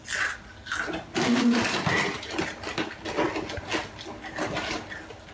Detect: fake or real real